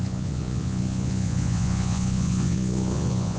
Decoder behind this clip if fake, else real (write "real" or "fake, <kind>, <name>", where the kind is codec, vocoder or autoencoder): fake, vocoder, Vocos